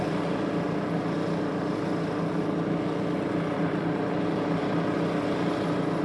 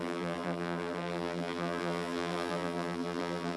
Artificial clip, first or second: second